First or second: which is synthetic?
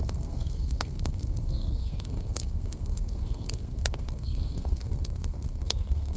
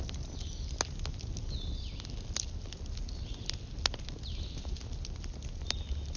first